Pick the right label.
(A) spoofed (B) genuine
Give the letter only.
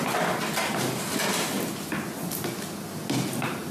B